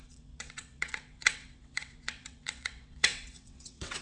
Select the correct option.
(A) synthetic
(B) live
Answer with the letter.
A